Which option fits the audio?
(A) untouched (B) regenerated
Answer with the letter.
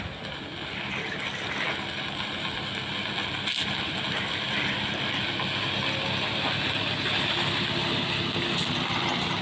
A